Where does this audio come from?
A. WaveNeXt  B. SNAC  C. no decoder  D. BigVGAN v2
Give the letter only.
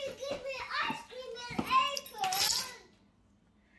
C